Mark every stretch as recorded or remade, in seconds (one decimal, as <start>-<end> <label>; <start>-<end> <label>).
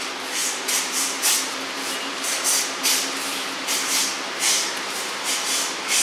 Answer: 0.0-0.4 recorded; 0.4-4.0 remade; 4.0-4.7 recorded; 4.7-5.3 remade; 5.3-6.0 recorded